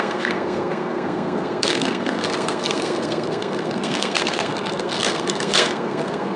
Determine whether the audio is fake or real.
fake